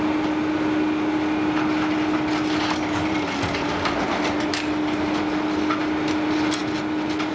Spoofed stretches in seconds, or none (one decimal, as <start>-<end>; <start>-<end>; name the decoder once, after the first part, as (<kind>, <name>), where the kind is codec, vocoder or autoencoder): none